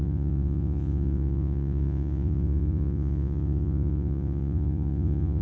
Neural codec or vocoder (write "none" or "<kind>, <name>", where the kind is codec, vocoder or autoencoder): vocoder, Vocos